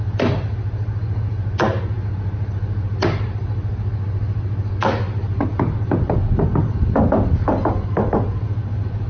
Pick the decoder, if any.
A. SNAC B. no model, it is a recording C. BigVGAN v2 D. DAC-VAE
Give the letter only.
B